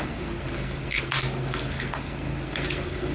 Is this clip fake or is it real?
fake